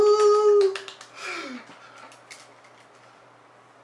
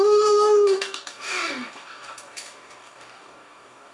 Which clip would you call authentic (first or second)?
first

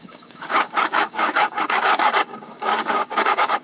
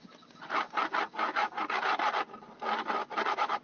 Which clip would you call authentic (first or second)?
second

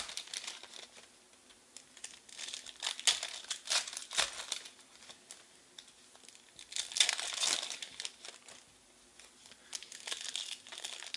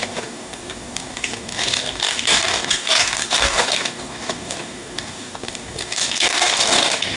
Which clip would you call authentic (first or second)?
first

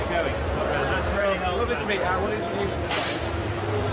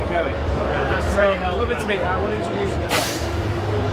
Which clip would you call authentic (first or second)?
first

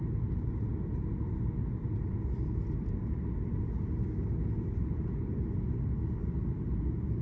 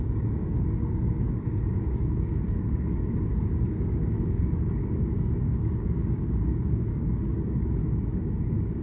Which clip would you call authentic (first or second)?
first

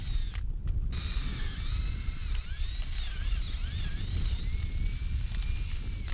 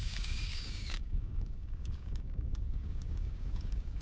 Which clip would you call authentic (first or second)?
first